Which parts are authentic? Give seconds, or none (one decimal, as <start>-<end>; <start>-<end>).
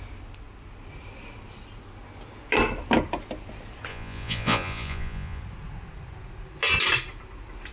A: 0.0-3.9; 5.4-7.7